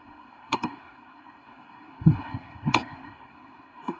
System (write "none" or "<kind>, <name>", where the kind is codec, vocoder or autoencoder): codec, SNAC